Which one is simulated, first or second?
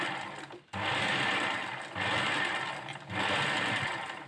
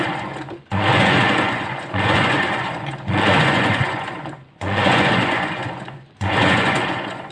second